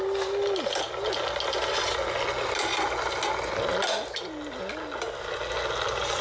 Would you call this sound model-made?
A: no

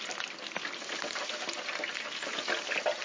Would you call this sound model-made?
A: no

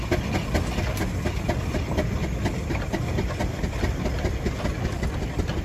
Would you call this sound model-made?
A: no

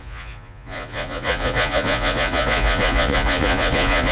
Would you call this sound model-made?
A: yes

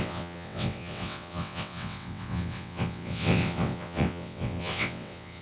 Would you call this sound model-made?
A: yes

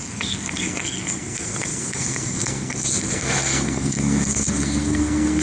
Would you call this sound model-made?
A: yes